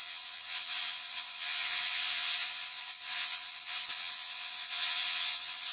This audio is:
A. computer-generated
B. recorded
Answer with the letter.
A